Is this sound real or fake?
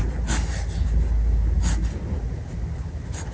real